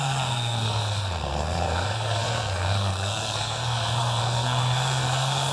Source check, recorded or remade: remade